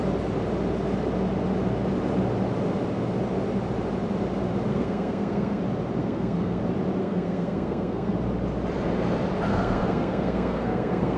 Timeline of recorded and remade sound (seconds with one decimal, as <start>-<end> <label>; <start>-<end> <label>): 0.0-4.7 recorded; 4.7-5.6 remade; 5.6-6.0 recorded; 6.0-6.6 remade; 6.6-7.0 recorded; 7.0-8.1 remade; 8.1-9.5 recorded; 9.5-11.2 remade